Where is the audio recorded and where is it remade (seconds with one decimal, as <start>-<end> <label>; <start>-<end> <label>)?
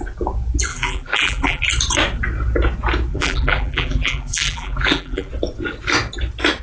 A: 0.0-0.7 recorded; 0.7-1.6 remade; 1.6-3.1 recorded; 3.1-5.3 remade; 5.3-6.6 recorded